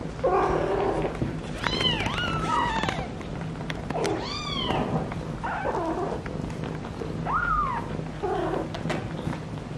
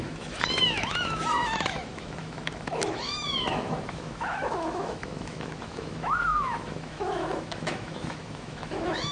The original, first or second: first